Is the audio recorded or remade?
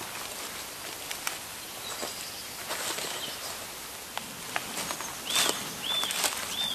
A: recorded